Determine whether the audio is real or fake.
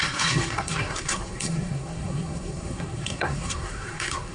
fake